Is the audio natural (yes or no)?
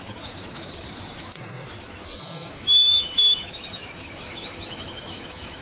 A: no